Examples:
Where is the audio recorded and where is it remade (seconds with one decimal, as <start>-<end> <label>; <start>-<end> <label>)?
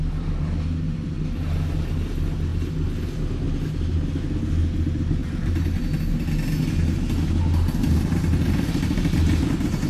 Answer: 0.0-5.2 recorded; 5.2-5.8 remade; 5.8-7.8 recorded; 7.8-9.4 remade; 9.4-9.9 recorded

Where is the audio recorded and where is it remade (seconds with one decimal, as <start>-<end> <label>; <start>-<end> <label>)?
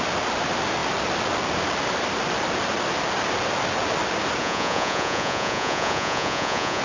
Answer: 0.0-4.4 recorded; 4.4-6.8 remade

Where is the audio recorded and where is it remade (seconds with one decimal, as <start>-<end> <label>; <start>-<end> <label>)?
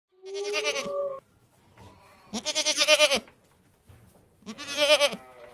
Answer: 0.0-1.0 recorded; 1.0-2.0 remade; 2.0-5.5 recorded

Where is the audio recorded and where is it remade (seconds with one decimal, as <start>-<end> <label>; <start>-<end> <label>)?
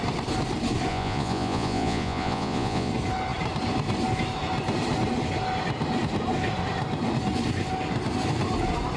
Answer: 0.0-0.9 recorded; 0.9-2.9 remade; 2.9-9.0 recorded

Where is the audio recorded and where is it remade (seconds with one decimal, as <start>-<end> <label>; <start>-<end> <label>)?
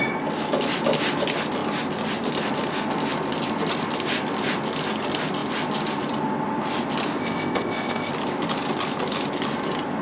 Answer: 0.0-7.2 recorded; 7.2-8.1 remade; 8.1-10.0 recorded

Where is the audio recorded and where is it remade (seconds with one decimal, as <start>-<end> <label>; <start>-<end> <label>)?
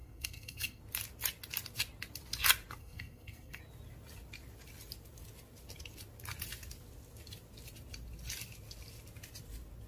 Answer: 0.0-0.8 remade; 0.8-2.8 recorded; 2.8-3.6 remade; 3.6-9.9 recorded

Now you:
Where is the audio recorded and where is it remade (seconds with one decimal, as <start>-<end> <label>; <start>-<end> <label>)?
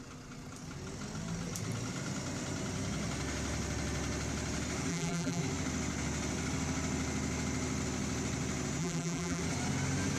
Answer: 0.0-4.9 recorded; 4.9-5.4 remade; 5.4-8.8 recorded; 8.8-9.4 remade; 9.4-10.2 recorded